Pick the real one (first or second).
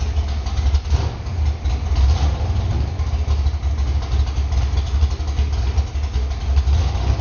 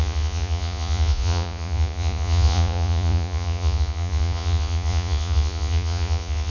first